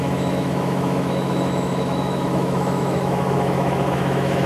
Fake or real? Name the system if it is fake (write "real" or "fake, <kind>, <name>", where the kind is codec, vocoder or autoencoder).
fake, autoencoder, DAC-VAE